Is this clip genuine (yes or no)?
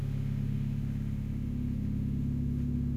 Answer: no